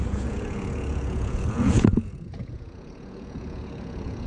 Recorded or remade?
remade